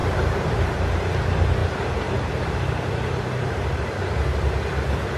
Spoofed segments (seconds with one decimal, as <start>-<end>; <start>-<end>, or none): 0.0-0.9; 1.6-4.6